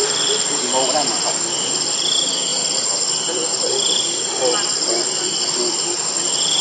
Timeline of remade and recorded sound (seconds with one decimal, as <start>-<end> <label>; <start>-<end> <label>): 0.0-6.6 recorded